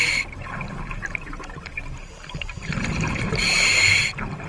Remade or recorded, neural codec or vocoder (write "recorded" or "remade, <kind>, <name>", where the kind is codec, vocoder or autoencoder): recorded